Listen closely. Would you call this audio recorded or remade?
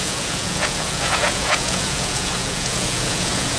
remade